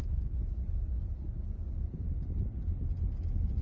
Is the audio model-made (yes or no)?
no